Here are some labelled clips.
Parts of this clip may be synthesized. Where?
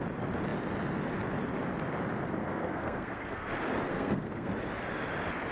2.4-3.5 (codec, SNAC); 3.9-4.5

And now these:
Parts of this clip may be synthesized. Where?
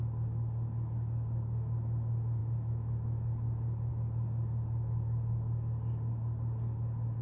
none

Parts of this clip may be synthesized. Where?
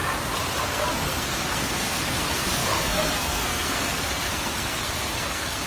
0.6-5.7 (codec, SNAC)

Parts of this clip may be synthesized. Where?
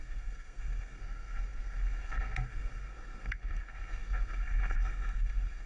0.0-5.7 (codec, SNAC)